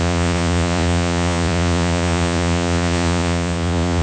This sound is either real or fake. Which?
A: fake